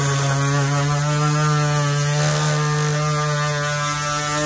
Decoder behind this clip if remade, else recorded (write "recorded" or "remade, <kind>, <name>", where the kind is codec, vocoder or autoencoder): recorded